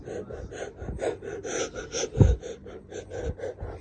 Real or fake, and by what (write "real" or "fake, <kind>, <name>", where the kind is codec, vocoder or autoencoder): real